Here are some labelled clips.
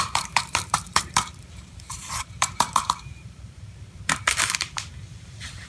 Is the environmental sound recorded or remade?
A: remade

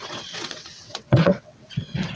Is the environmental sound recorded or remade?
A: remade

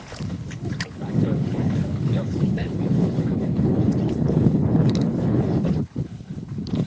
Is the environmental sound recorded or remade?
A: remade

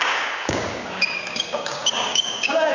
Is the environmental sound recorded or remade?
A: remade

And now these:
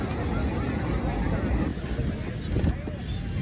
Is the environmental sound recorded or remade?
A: recorded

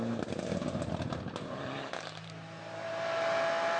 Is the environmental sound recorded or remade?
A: recorded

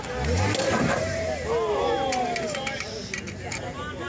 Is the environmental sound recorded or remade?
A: recorded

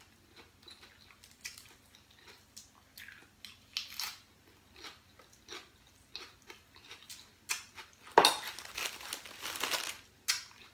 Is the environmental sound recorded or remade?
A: recorded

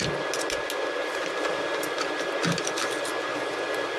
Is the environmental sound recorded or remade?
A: recorded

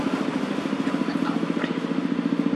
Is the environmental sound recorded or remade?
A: recorded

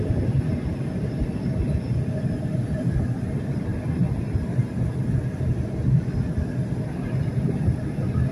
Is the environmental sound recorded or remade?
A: recorded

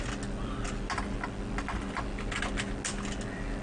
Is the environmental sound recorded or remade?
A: recorded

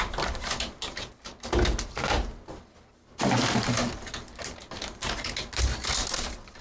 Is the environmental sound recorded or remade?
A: recorded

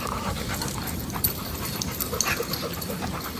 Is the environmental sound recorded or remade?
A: recorded